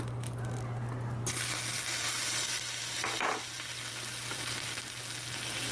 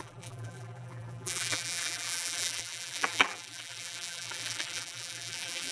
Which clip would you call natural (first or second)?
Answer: first